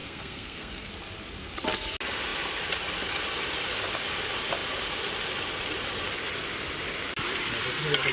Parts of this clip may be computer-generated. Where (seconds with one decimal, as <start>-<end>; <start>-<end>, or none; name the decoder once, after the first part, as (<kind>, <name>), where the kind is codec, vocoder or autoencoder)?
0.0-0.9 (codec, SNAC)